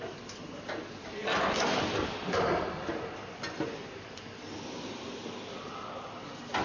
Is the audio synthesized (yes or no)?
no